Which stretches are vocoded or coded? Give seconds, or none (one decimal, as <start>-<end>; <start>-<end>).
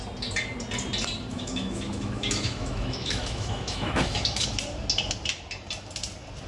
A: 1.3-4.5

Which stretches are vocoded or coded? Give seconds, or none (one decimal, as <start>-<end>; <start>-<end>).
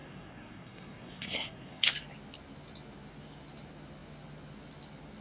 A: 0.0-1.9